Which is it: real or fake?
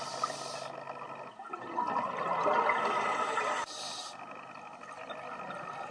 real